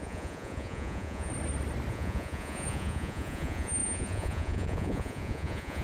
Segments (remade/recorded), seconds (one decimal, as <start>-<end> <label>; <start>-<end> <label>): 0.0-1.3 remade; 1.3-1.9 recorded; 1.9-5.8 remade